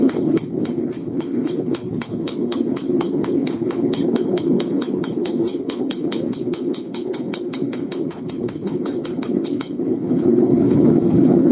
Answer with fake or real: fake